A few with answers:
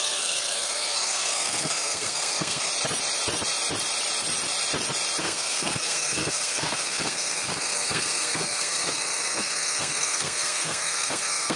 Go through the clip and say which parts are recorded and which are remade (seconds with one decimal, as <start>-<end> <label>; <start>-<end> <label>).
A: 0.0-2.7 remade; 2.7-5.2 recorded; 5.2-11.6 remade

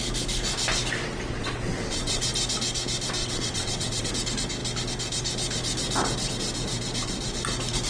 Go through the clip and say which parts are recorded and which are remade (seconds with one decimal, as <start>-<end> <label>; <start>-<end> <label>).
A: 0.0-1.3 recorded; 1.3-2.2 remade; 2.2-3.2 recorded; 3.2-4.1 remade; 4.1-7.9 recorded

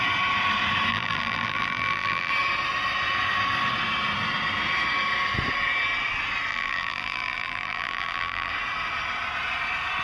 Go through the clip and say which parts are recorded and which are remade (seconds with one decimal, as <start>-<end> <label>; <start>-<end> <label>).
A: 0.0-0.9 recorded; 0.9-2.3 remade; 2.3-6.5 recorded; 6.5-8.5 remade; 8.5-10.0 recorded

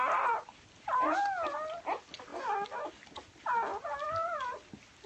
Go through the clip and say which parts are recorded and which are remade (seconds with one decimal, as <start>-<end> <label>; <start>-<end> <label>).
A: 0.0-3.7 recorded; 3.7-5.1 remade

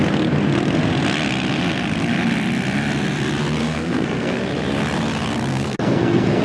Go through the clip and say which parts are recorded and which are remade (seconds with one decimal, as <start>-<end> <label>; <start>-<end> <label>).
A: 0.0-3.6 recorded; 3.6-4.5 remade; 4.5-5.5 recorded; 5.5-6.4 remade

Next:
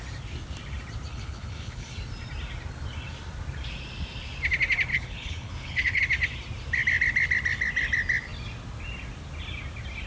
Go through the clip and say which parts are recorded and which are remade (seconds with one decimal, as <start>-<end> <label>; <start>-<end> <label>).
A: 0.0-1.1 recorded; 1.1-1.9 remade; 1.9-4.9 recorded; 4.9-6.0 remade; 6.0-10.1 recorded